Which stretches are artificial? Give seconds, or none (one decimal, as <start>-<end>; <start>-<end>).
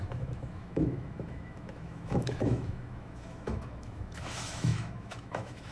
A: 0.0-5.7